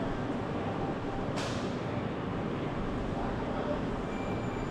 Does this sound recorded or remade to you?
recorded